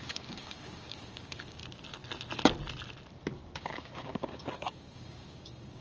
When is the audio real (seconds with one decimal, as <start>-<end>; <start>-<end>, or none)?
1.6-3.6

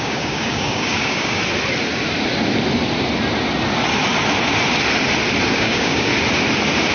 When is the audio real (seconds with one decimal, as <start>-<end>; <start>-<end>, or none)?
1.4-5.5; 6.1-6.9

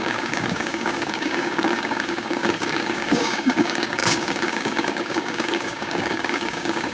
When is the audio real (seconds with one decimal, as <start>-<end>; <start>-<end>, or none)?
none